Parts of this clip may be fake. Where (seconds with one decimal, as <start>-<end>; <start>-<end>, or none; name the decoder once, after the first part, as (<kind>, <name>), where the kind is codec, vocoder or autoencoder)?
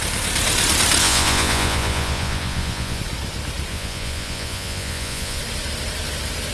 1.0-3.0 (vocoder, Vocos); 3.7-5.4